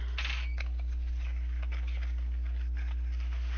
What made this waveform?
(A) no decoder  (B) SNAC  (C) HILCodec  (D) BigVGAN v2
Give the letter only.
A